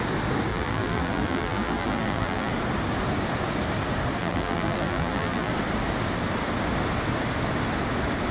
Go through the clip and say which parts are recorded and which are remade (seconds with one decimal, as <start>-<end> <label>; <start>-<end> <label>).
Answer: 0.0-0.5 recorded; 0.5-2.5 remade; 2.5-4.2 recorded; 4.2-5.5 remade; 5.5-8.3 recorded